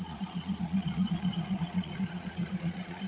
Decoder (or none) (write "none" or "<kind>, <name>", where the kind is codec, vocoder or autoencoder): vocoder, Vocos